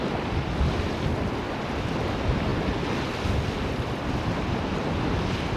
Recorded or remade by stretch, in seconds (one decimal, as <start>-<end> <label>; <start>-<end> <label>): 0.0-5.6 recorded